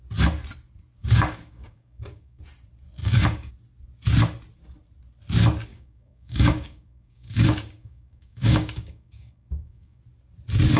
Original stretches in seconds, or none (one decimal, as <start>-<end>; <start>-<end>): 0.0-1.0; 2.4-3.0; 3.5-5.7; 10.0-10.8